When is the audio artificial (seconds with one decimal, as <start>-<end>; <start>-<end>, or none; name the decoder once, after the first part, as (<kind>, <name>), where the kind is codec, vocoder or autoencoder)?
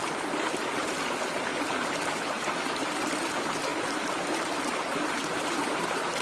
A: 0.8-1.5 (vocoder, BigVGAN v2); 2.1-6.2